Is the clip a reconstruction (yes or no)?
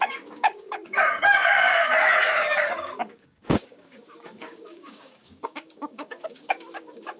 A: yes